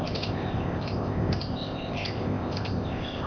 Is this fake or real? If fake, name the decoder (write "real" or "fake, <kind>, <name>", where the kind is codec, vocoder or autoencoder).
fake, codec, ZipCodec